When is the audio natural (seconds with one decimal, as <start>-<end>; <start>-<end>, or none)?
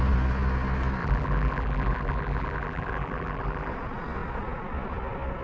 0.0-1.0; 3.7-5.4